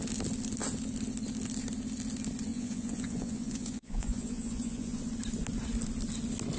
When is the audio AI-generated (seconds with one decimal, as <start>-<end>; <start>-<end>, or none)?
2.5-5.0